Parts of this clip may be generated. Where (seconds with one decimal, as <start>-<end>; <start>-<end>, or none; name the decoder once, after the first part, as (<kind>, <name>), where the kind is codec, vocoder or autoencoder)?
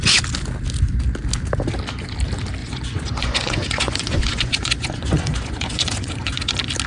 2.6-6.5 (vocoder, Vocos)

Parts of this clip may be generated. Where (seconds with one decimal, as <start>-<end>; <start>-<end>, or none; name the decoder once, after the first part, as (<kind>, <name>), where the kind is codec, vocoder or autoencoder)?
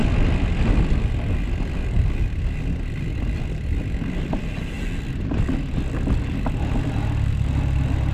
none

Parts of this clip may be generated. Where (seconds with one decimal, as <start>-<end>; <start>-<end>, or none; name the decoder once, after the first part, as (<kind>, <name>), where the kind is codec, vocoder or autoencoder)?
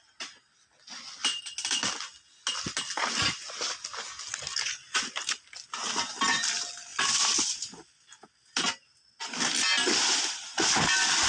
none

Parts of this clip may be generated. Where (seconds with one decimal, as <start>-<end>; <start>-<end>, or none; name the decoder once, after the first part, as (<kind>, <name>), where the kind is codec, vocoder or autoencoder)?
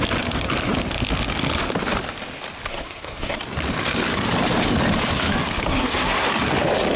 2.7-3.4 (codec, SNAC); 5.7-6.3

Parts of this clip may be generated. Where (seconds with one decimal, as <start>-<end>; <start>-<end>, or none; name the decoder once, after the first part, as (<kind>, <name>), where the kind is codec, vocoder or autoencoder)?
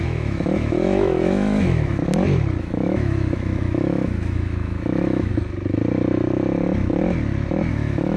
0.0-2.0 (autoencoder, DAC-VAE); 2.6-5.3; 7.7-8.2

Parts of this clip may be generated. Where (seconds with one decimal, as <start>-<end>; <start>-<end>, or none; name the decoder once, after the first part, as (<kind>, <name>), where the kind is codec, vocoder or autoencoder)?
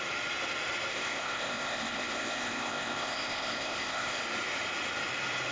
0.9-4.2 (codec, ZipCodec)